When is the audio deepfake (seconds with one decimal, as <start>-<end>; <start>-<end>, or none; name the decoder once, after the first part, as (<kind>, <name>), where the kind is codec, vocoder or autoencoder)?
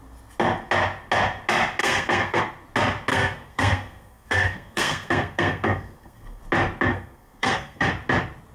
1.8-2.4 (codec, SNAC); 3.1-6.4; 6.9-7.9